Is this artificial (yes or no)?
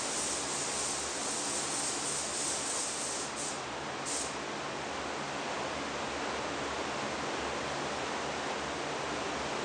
no